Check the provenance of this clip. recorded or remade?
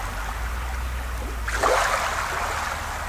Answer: recorded